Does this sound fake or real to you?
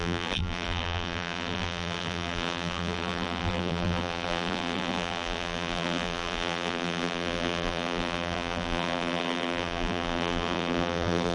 fake